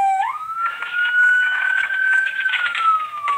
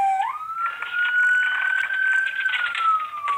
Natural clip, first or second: second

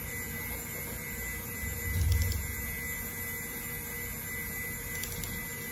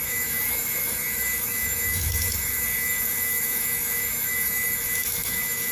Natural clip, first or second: first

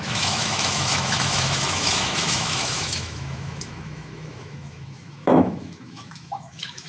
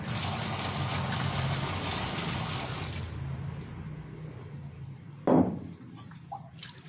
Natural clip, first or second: second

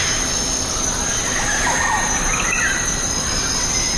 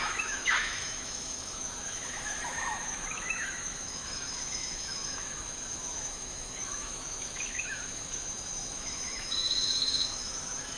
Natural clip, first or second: first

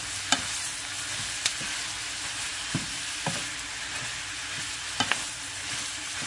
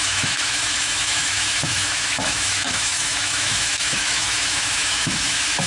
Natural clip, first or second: first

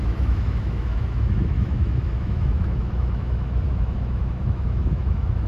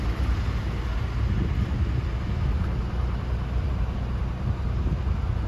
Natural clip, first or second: second